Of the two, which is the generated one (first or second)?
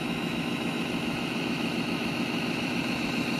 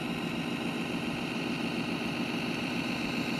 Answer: first